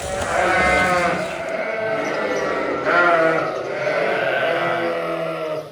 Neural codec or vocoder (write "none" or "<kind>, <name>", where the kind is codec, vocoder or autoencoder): none